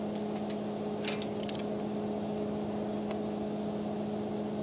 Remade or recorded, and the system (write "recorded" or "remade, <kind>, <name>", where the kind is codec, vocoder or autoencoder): recorded